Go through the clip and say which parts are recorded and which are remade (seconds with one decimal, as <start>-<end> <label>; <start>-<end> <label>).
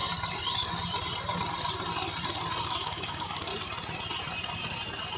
0.0-2.6 recorded; 2.6-3.5 remade; 3.5-5.2 recorded